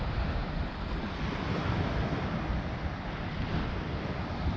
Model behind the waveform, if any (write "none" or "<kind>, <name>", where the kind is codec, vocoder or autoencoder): none